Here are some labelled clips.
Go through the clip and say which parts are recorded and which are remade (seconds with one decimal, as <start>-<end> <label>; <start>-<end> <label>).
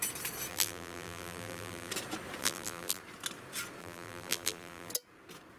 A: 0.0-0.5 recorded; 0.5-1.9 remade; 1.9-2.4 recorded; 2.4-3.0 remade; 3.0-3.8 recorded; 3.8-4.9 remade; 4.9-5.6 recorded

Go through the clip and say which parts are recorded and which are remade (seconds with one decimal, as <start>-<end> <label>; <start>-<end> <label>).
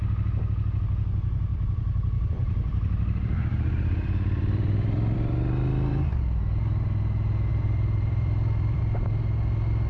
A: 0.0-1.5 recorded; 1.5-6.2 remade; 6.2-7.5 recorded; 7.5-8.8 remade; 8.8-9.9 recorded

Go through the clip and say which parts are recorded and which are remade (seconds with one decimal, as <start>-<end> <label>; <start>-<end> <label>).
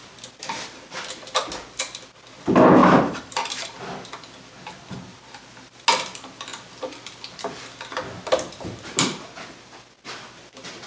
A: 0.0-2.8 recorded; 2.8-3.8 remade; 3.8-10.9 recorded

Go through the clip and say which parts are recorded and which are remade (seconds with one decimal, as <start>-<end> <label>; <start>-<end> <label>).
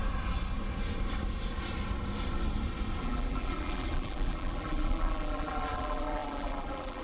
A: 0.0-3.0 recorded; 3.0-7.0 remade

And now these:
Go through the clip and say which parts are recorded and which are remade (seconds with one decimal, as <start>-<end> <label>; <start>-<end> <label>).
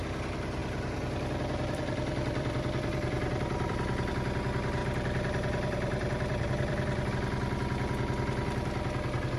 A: 0.0-0.6 recorded; 0.6-4.1 remade; 4.1-4.8 recorded; 4.8-7.1 remade; 7.1-9.4 recorded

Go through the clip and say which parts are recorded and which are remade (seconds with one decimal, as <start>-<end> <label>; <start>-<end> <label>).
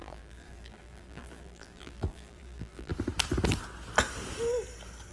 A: 0.0-2.9 remade; 2.9-5.1 recorded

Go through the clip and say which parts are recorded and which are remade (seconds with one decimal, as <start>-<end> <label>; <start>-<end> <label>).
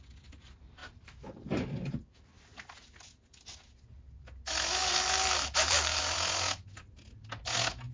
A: 0.0-0.8 recorded; 0.8-1.6 remade; 1.6-4.8 recorded; 4.8-6.0 remade; 6.0-7.9 recorded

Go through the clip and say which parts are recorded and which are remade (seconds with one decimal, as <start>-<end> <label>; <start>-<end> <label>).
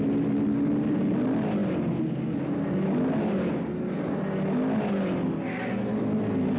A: 0.0-6.6 recorded